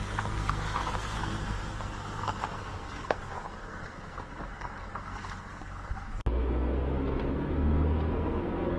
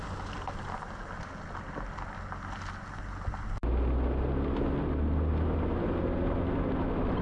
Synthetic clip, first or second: first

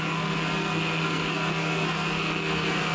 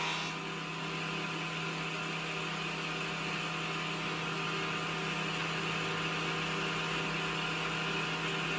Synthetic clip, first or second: first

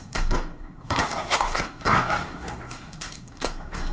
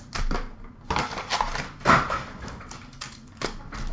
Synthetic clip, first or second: first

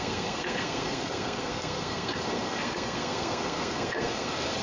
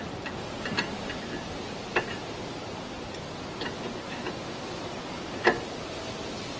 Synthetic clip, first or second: first